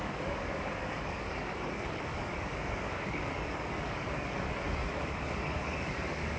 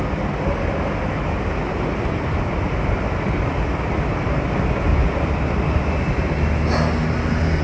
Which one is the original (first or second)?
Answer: second